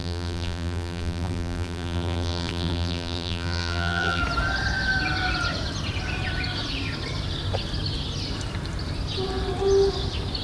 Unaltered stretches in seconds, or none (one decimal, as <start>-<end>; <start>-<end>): 4.2-10.4